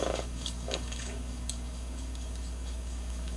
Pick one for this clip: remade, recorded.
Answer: remade